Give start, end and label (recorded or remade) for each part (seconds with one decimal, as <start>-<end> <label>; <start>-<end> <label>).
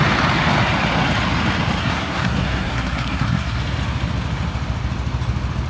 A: 0.0-1.8 recorded; 1.8-3.6 remade; 3.6-5.7 recorded